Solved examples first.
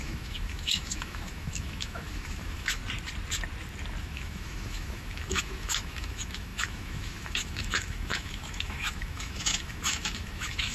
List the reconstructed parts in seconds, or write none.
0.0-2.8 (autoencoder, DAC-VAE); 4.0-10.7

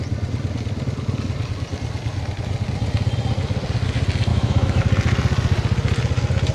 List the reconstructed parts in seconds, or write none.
4.3-4.8 (autoencoder, DAC-VAE)

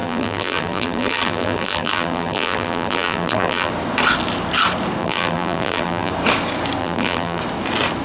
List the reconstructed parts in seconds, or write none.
0.0-3.7 (vocoder, BigVGAN v2); 5.0-6.1; 6.8-7.4

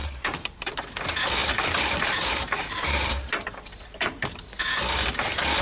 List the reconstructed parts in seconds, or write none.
0.0-0.7 (vocoder, BigVGAN v2); 1.4-4.6

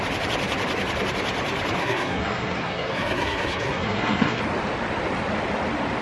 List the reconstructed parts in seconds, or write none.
1.8-4.4 (codec, SNAC)